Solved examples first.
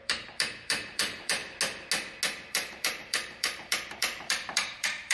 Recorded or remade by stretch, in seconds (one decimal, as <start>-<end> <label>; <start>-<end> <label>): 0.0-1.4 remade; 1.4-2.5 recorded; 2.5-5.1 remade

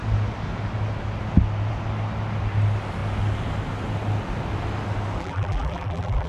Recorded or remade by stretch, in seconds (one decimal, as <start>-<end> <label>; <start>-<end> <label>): 0.0-5.2 recorded; 5.2-6.3 remade

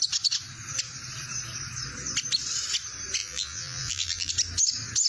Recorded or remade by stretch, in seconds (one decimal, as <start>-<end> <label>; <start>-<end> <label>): 0.0-3.2 recorded; 3.2-4.3 remade; 4.3-5.1 recorded